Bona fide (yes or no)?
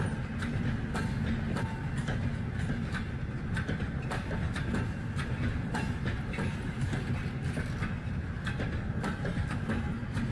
yes